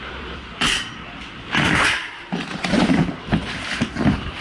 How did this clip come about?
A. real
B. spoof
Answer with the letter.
B